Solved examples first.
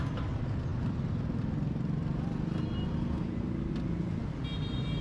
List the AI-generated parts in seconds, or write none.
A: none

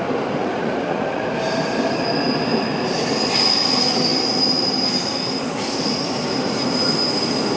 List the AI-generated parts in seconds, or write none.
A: 0.4-1.4

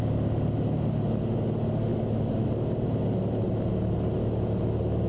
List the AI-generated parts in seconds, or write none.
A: none

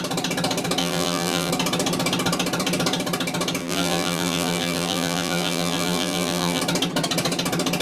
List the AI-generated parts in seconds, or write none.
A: 0.8-1.5; 3.6-6.6

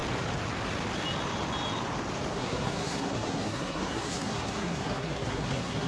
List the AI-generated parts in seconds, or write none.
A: 2.3-5.9